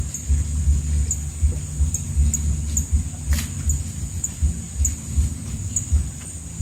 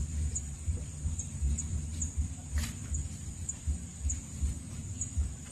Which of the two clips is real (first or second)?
first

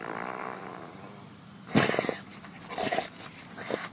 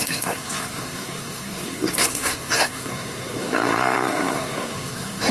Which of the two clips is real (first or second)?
first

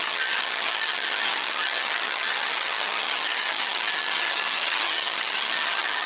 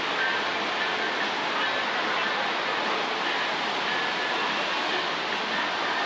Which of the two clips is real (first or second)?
second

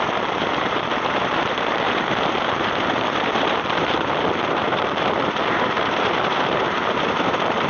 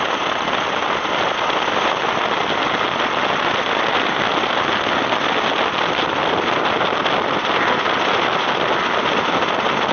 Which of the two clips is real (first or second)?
second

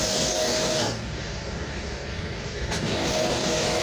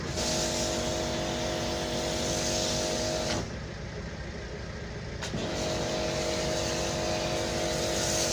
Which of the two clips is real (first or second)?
second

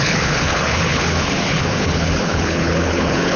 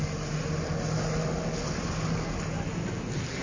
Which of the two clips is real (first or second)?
second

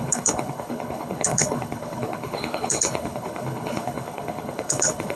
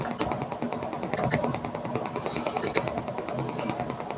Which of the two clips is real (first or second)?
second